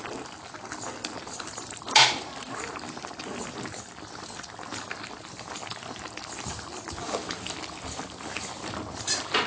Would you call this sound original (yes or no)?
yes